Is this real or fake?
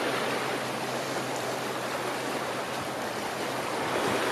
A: fake